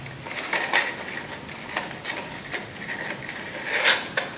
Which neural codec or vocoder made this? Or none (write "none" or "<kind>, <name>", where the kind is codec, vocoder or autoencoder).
none